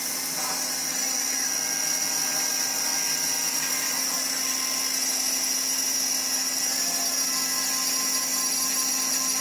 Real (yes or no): yes